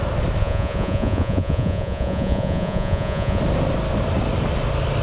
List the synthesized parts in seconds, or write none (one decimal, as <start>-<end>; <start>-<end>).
0.4-3.4